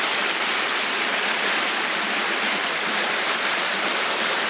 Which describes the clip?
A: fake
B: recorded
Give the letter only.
B